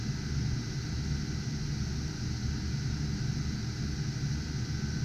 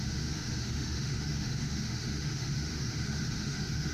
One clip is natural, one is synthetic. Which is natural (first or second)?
first